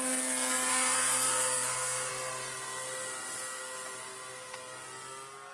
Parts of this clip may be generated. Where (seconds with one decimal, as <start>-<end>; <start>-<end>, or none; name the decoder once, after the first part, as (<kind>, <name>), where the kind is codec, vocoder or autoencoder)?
0.7-2.1 (codec, SNAC)